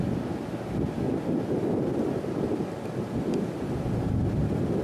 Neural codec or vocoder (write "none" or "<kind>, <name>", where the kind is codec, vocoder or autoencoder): none